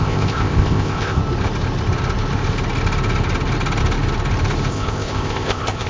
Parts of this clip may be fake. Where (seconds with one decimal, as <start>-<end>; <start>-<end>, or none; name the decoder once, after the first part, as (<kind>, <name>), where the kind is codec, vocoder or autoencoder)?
0.0-1.2 (codec, ZipCodec); 4.7-5.9